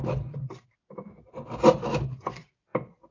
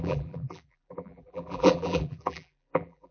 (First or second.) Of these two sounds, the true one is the first